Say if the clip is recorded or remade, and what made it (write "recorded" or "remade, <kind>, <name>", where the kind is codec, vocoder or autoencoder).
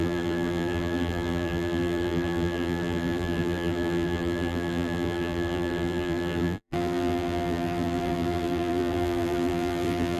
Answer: remade, vocoder, BigVGAN v2